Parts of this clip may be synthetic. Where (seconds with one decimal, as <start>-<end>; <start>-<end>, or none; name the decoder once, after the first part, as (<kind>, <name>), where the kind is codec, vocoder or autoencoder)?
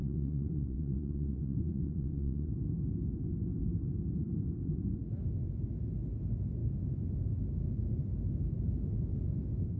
0.0-2.5 (vocoder, Vocos)